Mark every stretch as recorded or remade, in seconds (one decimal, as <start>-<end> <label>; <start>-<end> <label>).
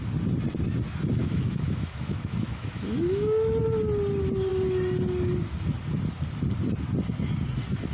0.0-1.2 recorded; 1.2-3.6 remade; 3.6-7.9 recorded